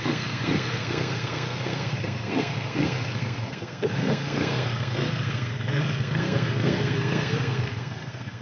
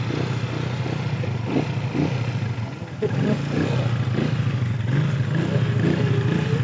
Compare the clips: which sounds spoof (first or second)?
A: first